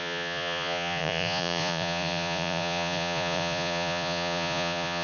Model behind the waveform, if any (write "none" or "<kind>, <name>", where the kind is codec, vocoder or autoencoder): vocoder, Vocos